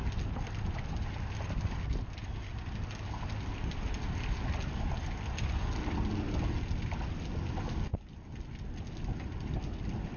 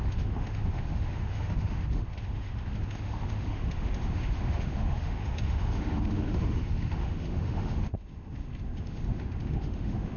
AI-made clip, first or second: second